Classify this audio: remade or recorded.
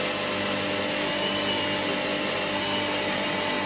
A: recorded